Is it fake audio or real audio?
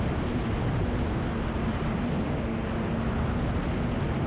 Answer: real